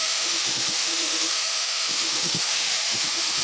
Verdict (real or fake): fake